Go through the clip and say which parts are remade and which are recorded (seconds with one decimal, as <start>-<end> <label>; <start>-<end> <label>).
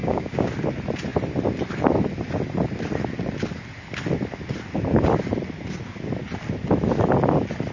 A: 0.0-0.5 remade; 0.5-7.7 recorded